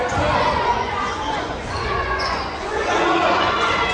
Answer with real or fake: fake